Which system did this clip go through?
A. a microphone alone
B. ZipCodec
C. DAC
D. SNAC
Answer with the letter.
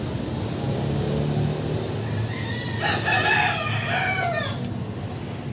A